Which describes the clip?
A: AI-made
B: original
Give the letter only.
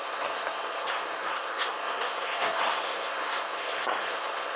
A